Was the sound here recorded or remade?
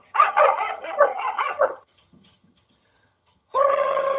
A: remade